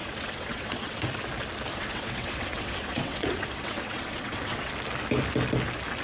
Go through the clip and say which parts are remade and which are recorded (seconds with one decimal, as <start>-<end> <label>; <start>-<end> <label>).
0.0-1.0 remade; 1.0-1.7 recorded; 1.7-4.7 remade; 4.7-6.0 recorded